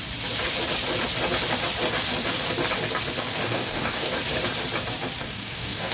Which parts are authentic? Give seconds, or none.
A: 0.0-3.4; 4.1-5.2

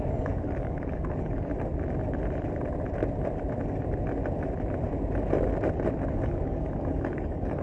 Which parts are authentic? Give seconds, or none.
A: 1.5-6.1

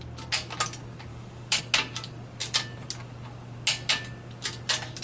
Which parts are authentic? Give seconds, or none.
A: 0.0-1.1; 1.6-5.0